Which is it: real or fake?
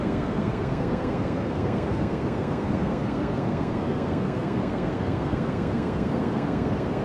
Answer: fake